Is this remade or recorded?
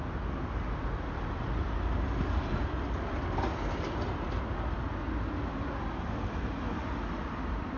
recorded